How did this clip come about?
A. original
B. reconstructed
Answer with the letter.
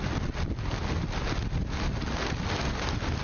A